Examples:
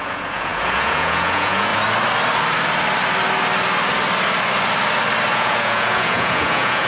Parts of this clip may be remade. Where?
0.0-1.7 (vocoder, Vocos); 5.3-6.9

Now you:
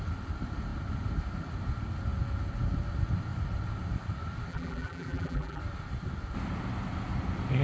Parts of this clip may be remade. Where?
4.5-5.6 (vocoder, BigVGAN v2)

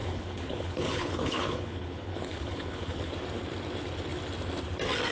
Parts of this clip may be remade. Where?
0.0-3.1 (codec, HILCodec)

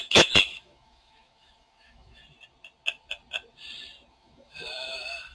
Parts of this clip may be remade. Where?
0.0-2.2 (autoencoder, DAC-VAE); 4.1-5.3